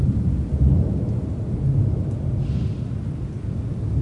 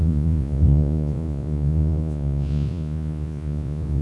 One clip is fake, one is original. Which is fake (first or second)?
second